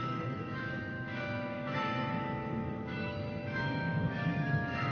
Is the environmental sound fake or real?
fake